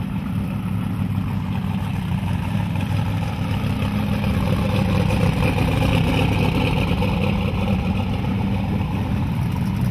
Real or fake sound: real